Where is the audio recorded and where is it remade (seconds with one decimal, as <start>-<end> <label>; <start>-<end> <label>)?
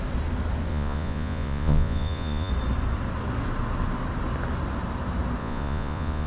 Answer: 0.0-0.7 recorded; 0.7-2.5 remade; 2.5-5.4 recorded; 5.4-6.3 remade